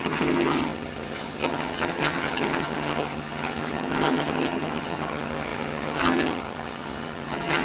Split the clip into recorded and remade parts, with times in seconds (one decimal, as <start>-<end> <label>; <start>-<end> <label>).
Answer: 0.0-7.6 remade

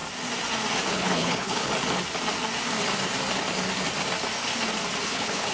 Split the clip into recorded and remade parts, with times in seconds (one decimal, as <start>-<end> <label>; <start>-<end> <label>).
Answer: 0.0-0.9 recorded; 0.9-1.7 remade; 1.7-5.0 recorded; 5.0-5.5 remade